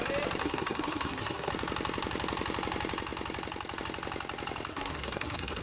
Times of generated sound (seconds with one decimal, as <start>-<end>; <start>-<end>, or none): 0.4-1.5; 4.7-5.6